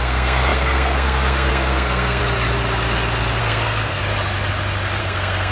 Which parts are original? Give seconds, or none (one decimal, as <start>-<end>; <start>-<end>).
2.2-3.4; 4.0-5.0